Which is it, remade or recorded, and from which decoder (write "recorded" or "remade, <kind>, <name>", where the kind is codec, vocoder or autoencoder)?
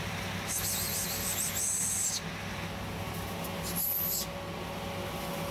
recorded